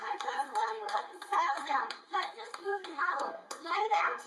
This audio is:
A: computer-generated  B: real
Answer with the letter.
A